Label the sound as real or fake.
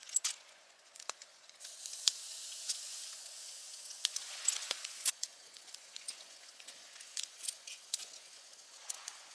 fake